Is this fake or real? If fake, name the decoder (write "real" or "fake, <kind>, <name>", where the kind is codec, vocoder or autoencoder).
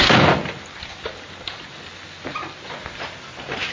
real